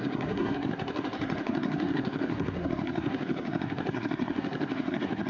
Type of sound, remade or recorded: remade